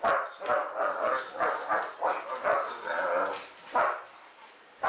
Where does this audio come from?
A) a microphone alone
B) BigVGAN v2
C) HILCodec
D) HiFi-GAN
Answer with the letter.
A